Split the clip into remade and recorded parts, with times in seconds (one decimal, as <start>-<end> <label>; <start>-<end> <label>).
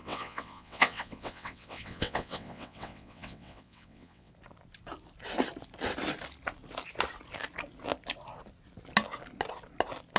0.0-4.3 remade; 4.3-10.2 recorded